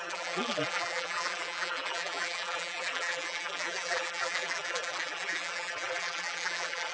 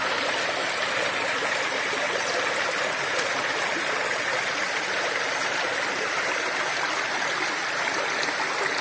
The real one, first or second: second